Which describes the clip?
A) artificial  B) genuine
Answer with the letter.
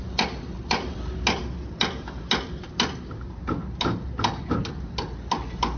B